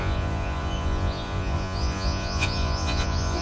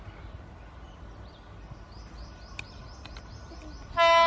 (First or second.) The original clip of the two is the second